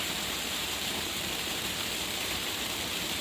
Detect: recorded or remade remade